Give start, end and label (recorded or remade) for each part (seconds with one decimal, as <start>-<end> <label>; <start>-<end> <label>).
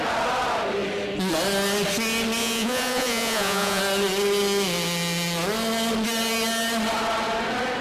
0.0-2.4 recorded; 2.4-3.8 remade; 3.8-7.8 recorded